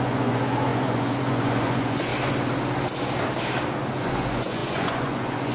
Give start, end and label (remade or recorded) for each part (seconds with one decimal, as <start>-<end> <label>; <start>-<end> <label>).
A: 0.0-2.1 remade; 2.1-4.0 recorded; 4.0-5.5 remade